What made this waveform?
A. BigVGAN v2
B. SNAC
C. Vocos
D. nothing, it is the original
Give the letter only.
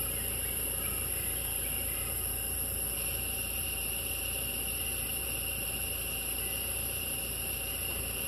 D